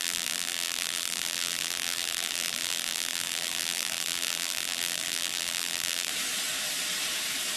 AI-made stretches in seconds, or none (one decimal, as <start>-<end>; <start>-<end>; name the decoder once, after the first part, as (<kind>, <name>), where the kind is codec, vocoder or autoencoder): 0.0-6.1 (vocoder, BigVGAN v2)